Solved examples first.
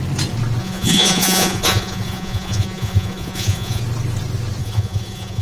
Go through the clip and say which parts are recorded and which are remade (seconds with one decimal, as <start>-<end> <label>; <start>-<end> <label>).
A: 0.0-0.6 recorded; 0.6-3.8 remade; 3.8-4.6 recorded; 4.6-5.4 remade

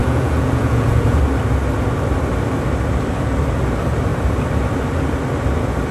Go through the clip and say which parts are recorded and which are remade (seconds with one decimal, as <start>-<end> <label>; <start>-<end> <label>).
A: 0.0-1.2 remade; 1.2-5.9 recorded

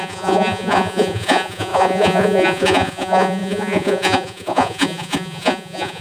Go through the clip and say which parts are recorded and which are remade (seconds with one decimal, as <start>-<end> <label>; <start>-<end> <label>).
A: 0.0-6.0 remade

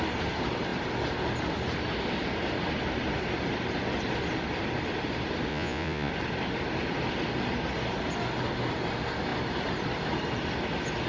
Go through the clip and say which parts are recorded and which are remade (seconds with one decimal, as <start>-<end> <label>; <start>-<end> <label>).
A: 0.0-5.5 recorded; 5.5-6.1 remade; 6.1-11.1 recorded

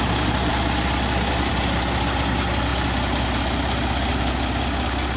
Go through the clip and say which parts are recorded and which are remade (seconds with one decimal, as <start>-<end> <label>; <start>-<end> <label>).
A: 0.0-5.2 recorded

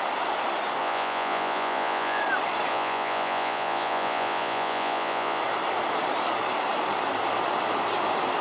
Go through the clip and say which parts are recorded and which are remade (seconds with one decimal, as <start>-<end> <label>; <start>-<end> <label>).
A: 0.0-0.8 recorded; 0.8-2.2 remade; 2.2-2.7 recorded; 2.7-5.4 remade; 5.4-8.4 recorded